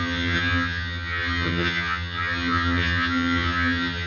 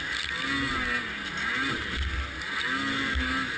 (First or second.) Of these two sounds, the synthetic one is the first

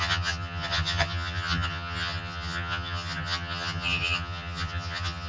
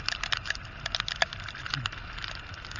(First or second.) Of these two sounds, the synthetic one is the first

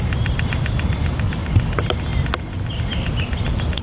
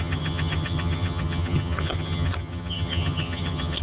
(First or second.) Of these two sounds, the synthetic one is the second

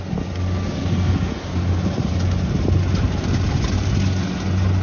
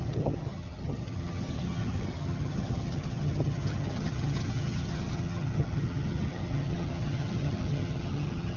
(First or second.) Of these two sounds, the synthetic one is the second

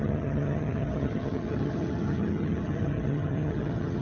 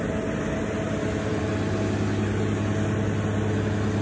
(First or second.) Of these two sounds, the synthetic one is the first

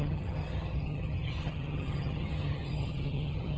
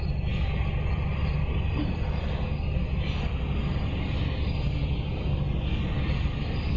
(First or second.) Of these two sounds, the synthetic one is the first